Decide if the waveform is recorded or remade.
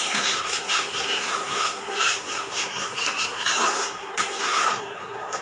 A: remade